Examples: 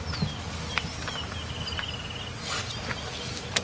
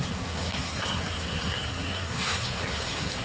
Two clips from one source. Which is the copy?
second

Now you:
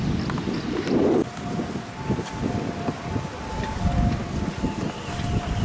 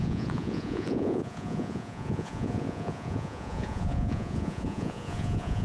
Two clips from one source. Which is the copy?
second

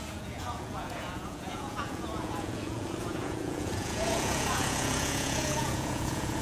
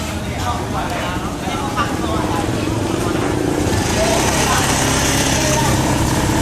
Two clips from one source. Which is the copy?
first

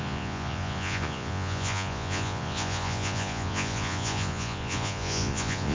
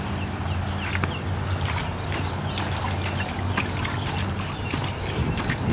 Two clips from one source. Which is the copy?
first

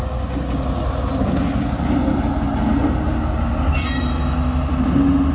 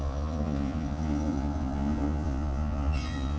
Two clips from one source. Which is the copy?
second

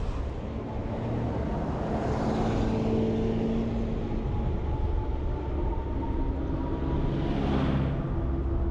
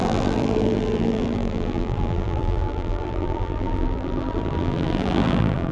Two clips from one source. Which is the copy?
second